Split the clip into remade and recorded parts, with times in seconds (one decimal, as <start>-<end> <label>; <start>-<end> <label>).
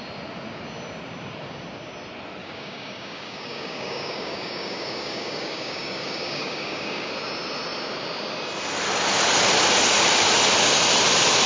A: 0.0-2.4 recorded; 2.4-7.1 remade; 7.1-11.5 recorded